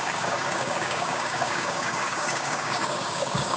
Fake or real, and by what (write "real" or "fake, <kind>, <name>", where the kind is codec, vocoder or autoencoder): fake, codec, DAC